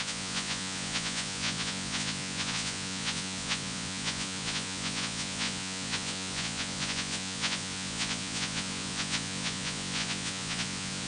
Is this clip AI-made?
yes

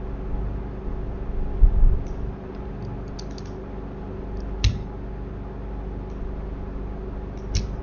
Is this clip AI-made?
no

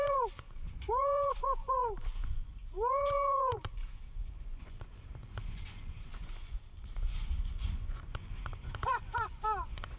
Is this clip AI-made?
yes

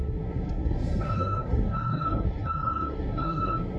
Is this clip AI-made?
yes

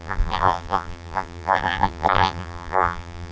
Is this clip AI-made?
yes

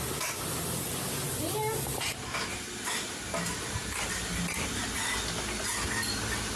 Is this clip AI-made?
no